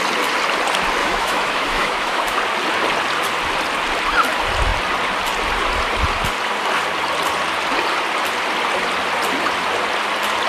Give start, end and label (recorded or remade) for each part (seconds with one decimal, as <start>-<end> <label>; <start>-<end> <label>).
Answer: 0.0-1.0 recorded; 1.0-2.4 remade; 2.4-10.5 recorded